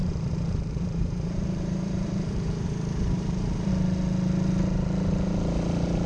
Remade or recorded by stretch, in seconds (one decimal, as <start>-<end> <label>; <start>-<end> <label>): 0.0-3.7 remade; 3.7-6.1 recorded